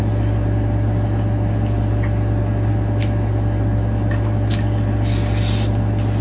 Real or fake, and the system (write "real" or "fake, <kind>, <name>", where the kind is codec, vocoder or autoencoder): real